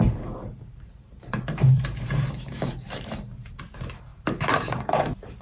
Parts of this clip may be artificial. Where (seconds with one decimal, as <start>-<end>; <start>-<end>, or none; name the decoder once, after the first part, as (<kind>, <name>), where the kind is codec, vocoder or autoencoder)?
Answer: 0.4-3.6 (vocoder, BigVGAN v2); 4.1-5.4